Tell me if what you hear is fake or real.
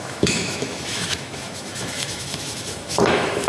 fake